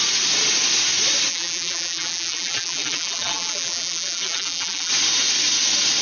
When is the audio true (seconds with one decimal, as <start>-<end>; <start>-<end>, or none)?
0.0-1.3; 4.9-6.0